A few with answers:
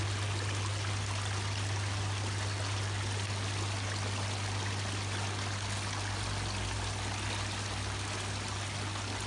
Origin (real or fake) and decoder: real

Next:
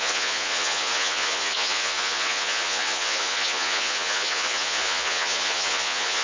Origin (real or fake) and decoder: fake, vocoder, Vocos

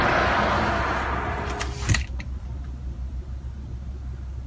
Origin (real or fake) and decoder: real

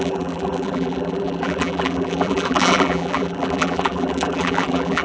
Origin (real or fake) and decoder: fake, vocoder, BigVGAN v2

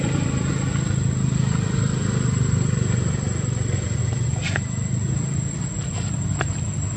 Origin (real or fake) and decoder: real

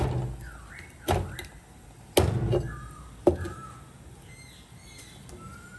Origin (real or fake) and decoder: real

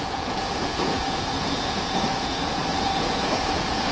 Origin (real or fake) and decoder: fake, vocoder, Vocos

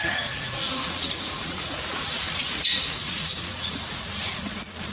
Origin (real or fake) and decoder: fake, vocoder, Vocos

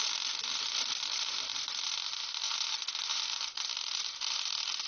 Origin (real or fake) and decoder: real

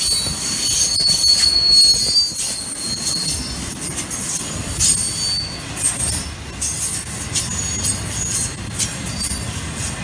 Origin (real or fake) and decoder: real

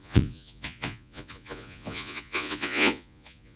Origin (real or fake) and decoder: fake, vocoder, Vocos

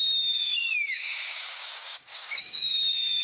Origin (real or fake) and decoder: fake, codec, DAC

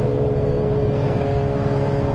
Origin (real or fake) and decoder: fake, codec, SNAC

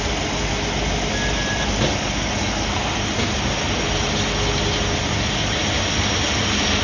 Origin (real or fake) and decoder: real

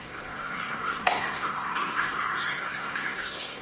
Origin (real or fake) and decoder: fake, codec, SNAC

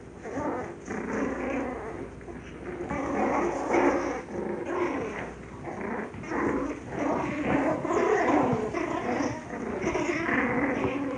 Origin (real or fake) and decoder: real